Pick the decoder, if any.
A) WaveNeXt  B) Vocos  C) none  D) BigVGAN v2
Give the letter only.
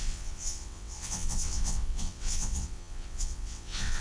A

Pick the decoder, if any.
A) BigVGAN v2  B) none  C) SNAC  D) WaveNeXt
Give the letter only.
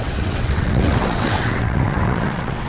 D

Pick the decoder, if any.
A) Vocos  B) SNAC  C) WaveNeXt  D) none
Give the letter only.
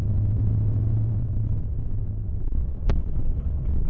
C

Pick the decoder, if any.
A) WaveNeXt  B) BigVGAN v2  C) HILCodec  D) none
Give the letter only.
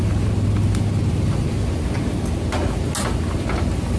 D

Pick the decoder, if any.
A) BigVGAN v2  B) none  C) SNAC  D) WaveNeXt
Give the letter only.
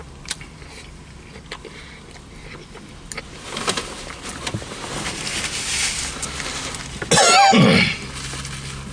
B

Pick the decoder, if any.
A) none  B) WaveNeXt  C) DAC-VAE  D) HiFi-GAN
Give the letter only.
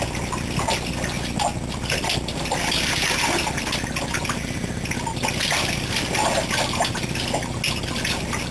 A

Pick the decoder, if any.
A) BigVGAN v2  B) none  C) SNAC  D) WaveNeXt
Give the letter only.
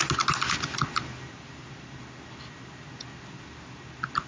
B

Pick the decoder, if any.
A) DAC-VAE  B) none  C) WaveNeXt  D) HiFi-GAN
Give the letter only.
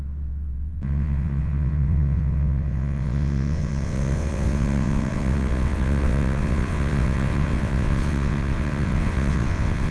C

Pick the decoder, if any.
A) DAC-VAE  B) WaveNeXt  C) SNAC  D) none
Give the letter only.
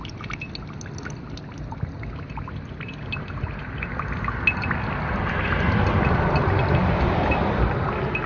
D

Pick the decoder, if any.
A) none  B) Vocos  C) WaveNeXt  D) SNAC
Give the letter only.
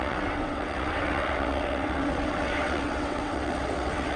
C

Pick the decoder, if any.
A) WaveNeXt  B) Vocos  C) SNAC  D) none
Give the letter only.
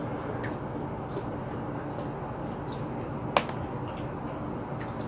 D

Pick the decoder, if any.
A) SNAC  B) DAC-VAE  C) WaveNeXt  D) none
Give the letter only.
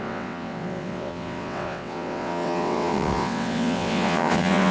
C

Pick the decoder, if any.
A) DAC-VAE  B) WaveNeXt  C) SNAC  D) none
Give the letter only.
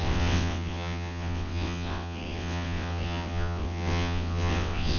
B